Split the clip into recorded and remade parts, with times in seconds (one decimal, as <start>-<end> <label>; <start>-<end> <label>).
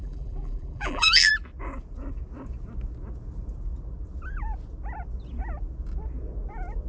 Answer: 0.0-1.3 remade; 1.3-6.9 recorded